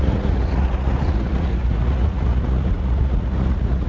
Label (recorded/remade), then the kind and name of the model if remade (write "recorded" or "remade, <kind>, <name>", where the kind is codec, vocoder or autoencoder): remade, vocoder, Vocos